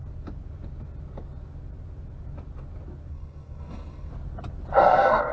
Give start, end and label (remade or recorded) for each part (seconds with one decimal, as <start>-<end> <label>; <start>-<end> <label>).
0.0-3.1 recorded; 3.1-4.1 remade; 4.1-4.8 recorded; 4.8-5.3 remade